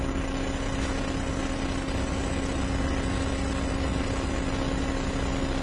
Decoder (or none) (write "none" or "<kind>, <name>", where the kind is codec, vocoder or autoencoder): none